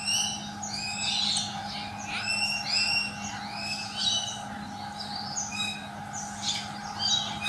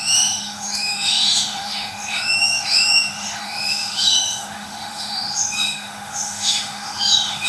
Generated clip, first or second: second